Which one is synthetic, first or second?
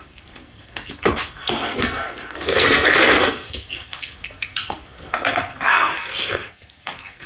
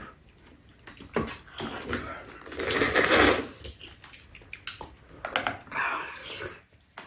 first